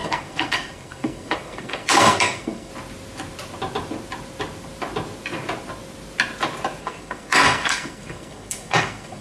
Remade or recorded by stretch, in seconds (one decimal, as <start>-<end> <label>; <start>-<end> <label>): 0.0-2.7 remade; 2.7-6.8 recorded; 6.8-9.2 remade